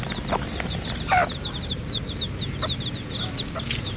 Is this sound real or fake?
real